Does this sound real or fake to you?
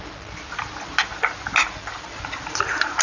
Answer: real